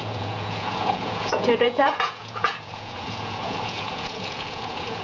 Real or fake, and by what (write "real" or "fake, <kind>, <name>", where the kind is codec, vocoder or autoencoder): fake, vocoder, Vocos